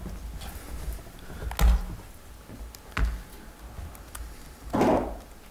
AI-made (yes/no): no